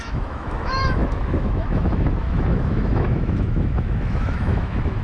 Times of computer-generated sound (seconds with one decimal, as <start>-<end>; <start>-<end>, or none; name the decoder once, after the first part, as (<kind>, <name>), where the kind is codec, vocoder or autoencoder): 0.0-5.0 (autoencoder, DAC-VAE)